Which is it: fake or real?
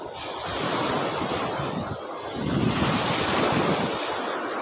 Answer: real